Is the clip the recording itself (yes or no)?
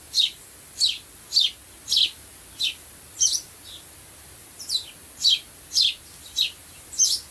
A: yes